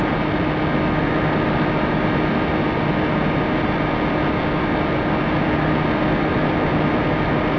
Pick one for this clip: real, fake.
real